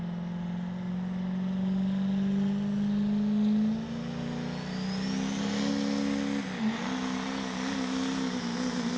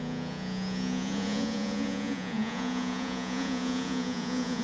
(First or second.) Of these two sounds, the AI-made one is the second